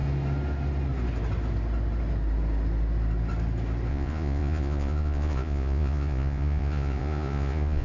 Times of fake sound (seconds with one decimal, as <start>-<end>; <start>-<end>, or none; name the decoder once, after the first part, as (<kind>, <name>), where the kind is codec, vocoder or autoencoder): 3.9-7.8 (vocoder, Vocos)